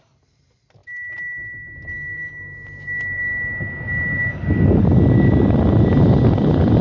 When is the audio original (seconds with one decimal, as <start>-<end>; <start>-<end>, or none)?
0.0-6.8